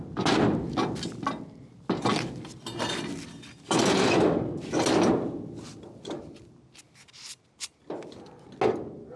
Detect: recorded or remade recorded